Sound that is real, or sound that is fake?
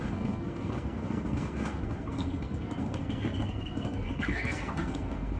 fake